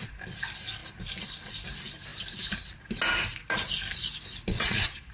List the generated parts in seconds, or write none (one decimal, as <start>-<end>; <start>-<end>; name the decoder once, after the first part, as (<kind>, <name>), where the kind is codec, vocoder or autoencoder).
4.5-5.1 (vocoder, Vocos)